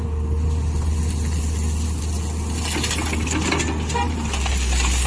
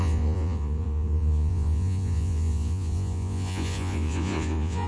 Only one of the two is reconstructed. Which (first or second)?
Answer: second